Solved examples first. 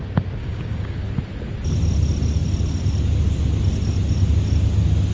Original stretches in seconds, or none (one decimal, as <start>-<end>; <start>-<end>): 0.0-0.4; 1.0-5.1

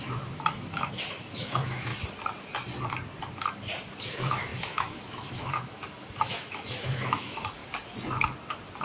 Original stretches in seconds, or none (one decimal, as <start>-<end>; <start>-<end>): 1.9-3.9; 7.6-8.8

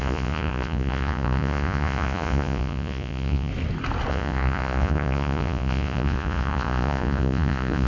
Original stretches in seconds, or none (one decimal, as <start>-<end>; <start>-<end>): 3.5-4.1

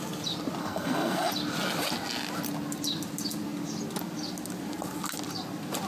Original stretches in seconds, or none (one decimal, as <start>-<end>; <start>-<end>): 0.0-0.6; 1.3-5.9

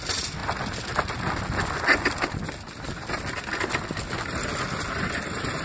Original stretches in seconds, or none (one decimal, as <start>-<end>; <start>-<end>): 0.0-5.6

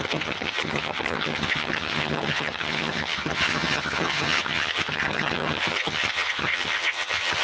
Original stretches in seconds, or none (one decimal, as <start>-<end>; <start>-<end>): none

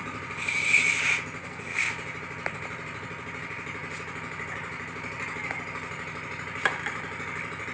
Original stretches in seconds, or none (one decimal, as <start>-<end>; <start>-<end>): 0.0-1.4; 1.9-7.7

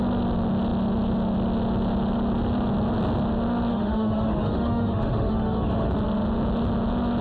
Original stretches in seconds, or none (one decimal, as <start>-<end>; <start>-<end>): 0.0-3.7; 5.9-7.2